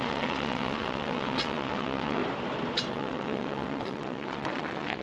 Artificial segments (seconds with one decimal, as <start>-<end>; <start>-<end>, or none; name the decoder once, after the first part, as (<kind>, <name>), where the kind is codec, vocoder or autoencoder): 0.0-2.2 (vocoder, WaveNeXt); 2.9-5.0